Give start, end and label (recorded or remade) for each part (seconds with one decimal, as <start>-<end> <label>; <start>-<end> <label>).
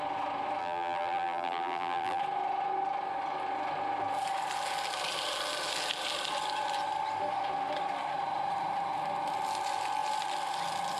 0.0-0.6 recorded; 0.6-2.2 remade; 2.2-11.0 recorded